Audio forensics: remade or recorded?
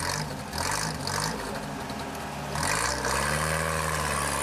recorded